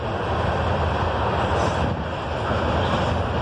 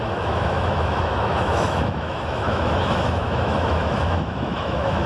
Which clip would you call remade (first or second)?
second